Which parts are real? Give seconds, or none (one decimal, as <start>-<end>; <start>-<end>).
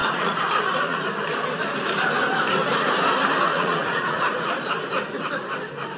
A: 1.0-3.5; 4.7-6.0